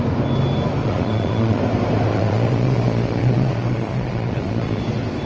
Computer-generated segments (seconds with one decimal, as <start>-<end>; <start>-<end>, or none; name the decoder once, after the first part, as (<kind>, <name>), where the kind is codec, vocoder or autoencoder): 0.8-1.6 (vocoder, Vocos); 2.1-4.8